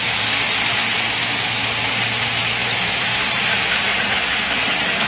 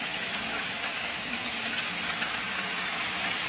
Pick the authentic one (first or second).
first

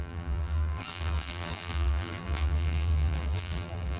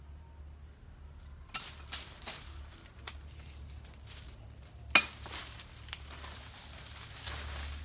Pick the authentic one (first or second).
second